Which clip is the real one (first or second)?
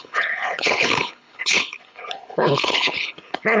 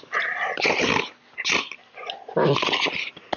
second